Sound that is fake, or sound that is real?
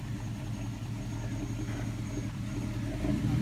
real